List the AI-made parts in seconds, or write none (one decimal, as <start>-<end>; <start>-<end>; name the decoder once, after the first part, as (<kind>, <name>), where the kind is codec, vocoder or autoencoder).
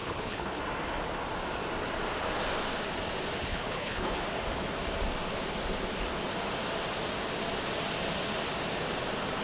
0.0-0.6 (codec, HILCodec); 3.4-4.2